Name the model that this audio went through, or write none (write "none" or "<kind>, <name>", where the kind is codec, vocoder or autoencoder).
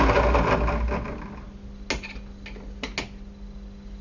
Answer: none